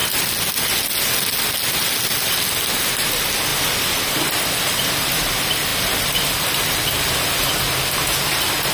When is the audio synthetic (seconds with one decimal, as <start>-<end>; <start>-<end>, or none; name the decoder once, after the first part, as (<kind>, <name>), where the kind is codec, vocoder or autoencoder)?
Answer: none